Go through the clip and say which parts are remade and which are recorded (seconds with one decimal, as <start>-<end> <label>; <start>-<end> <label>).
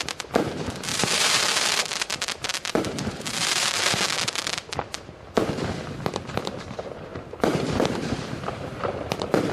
0.0-0.9 recorded; 0.9-4.0 remade; 4.0-7.1 recorded; 7.1-9.1 remade; 9.1-9.5 recorded